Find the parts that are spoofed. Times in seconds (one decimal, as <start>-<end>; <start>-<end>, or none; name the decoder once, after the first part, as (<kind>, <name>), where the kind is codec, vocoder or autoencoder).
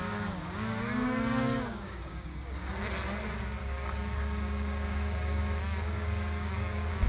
0.0-2.7 (codec, DAC); 3.6-7.1